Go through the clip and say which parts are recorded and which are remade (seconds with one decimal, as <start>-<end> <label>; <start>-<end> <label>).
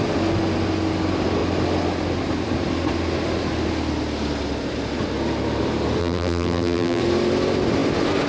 0.0-6.0 recorded; 6.0-7.0 remade; 7.0-8.3 recorded